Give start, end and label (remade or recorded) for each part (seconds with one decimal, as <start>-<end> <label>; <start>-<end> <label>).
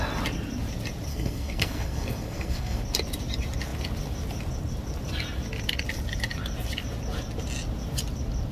0.0-1.1 recorded; 1.1-2.8 remade; 2.8-8.5 recorded